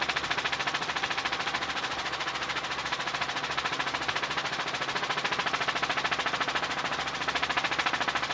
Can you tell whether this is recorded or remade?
recorded